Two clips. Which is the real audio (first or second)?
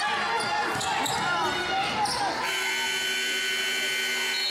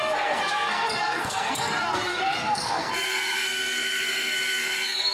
first